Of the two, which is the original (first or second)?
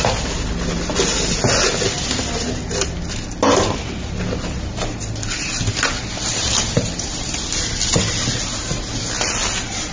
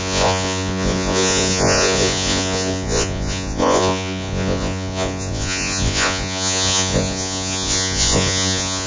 first